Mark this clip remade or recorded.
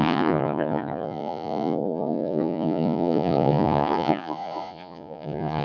remade